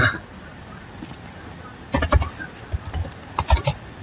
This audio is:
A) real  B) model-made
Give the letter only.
A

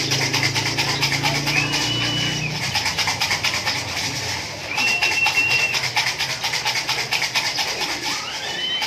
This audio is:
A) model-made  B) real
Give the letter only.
A